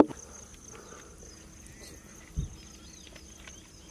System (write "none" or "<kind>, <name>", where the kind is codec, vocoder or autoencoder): none